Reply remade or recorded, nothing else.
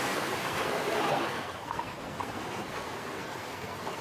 remade